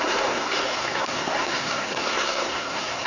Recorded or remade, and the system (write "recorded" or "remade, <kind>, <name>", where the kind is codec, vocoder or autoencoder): remade, codec, SNAC